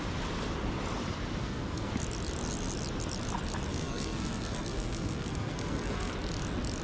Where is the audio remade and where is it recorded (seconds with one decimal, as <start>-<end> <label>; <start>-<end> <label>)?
0.0-1.4 recorded; 1.4-1.9 remade; 1.9-3.7 recorded; 3.7-6.1 remade; 6.1-6.8 recorded